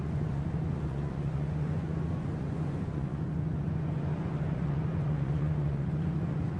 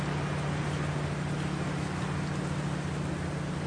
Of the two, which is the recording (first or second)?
second